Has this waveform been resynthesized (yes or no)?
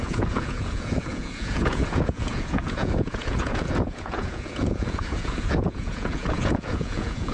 yes